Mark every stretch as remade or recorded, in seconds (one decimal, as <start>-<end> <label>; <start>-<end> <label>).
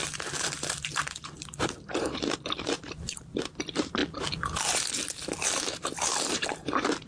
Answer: 0.0-4.0 remade; 4.0-5.5 recorded; 5.5-7.1 remade